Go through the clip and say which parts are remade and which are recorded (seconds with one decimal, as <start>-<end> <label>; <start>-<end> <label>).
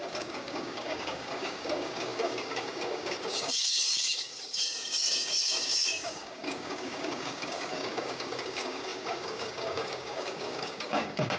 0.0-11.4 remade